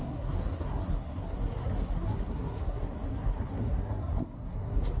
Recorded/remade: remade